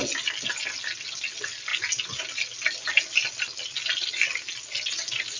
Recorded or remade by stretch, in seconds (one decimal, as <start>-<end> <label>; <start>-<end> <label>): 0.0-5.4 recorded